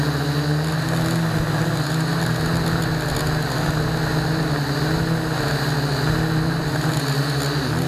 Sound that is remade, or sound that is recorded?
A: recorded